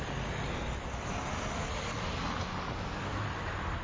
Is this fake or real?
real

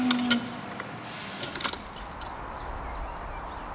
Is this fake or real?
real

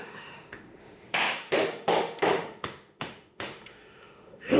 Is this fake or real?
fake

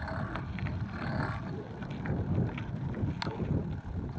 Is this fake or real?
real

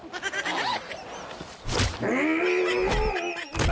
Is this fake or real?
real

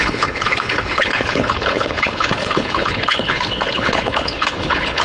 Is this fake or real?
fake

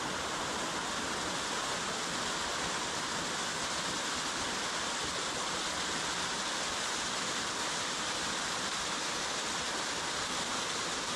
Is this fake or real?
real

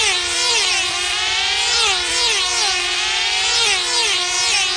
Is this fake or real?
real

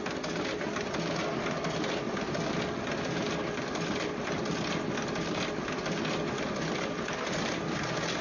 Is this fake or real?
real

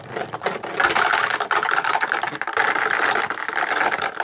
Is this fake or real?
real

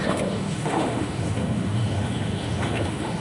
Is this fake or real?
fake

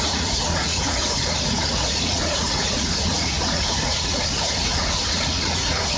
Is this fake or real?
fake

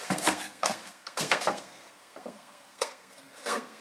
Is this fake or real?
fake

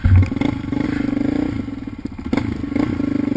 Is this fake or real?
real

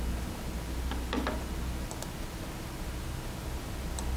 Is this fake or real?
real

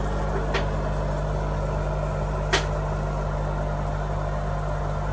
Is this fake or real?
real